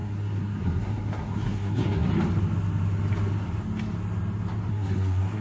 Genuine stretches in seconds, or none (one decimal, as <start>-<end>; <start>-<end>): 2.1-4.7